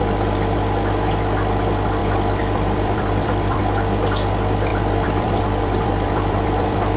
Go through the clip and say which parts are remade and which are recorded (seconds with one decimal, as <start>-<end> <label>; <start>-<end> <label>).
0.0-2.0 recorded; 2.0-3.6 remade; 3.6-4.7 recorded; 4.7-7.0 remade